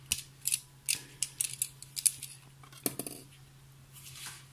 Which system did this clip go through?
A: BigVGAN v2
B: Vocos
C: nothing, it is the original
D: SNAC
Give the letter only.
C